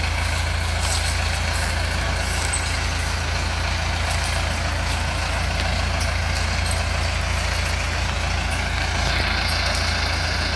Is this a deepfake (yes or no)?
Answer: no